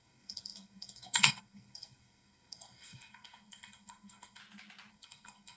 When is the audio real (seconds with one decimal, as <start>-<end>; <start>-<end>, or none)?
4.4-4.9